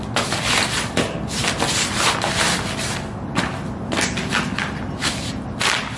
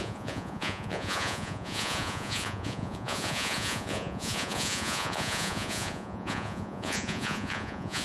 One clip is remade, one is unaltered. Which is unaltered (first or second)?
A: first